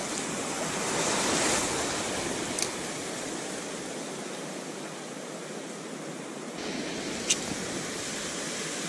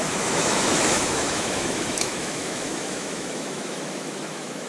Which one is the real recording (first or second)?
first